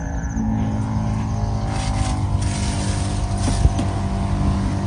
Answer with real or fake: real